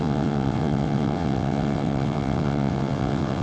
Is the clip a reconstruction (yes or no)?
yes